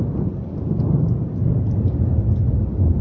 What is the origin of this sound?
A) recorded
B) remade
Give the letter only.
A